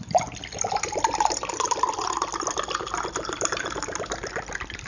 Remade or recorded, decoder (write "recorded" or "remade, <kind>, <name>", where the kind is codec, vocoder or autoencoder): recorded